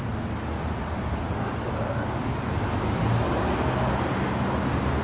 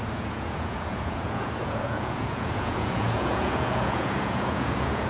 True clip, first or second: first